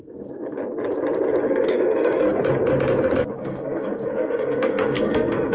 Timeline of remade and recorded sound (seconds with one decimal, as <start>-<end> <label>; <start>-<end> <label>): 0.0-0.6 remade; 0.6-1.5 recorded; 1.5-2.4 remade; 2.4-3.3 recorded; 3.3-5.5 remade